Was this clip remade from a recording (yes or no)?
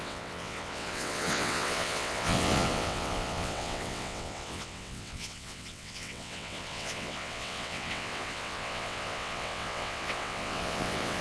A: yes